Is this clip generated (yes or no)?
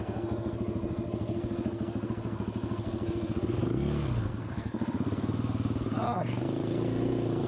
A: yes